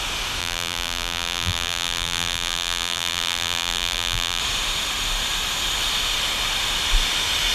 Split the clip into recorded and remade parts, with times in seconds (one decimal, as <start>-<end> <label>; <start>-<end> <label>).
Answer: 0.0-0.4 recorded; 0.4-4.4 remade; 4.4-7.5 recorded